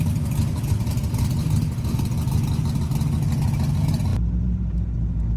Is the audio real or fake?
real